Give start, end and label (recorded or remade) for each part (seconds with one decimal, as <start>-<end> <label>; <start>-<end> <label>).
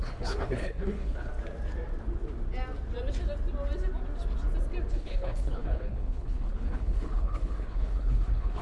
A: 0.0-1.3 remade; 1.3-4.9 recorded; 4.9-8.6 remade